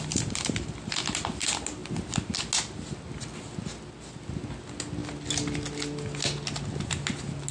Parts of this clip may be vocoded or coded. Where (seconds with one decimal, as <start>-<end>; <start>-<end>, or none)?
none